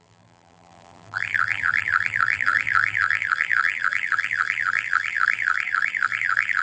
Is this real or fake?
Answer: fake